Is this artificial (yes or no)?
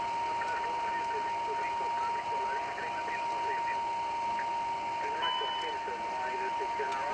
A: no